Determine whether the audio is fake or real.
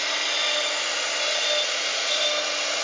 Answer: real